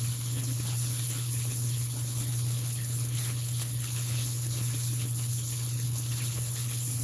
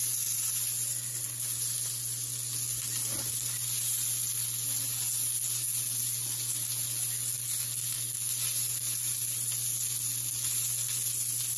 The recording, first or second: second